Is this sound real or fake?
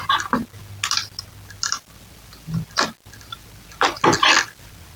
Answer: real